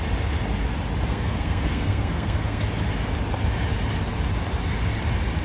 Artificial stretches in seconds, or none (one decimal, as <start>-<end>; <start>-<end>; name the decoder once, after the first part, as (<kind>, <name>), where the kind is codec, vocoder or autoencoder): 1.1-2.6 (codec, SNAC)